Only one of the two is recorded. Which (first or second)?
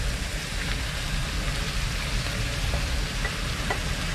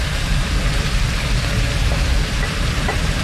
first